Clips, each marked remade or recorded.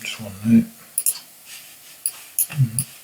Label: recorded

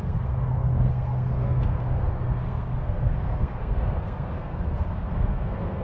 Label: remade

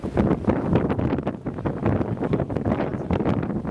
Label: recorded